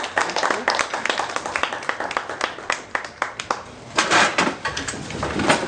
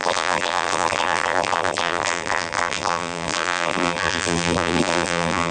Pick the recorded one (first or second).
first